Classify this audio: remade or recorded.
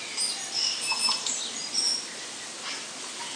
recorded